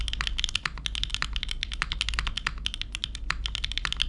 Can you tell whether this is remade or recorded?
recorded